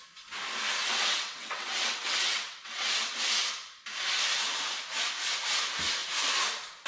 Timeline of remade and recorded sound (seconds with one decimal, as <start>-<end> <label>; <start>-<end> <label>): 0.0-0.8 recorded; 0.8-2.9 remade; 2.9-6.9 recorded